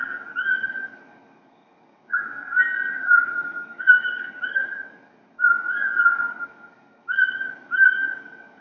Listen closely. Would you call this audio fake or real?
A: fake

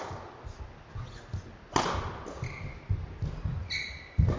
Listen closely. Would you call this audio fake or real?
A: real